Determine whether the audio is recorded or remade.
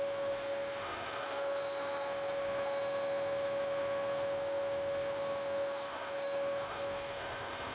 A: remade